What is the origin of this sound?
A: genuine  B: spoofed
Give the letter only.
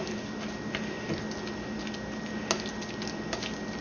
A